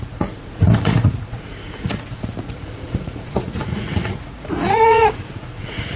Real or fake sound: fake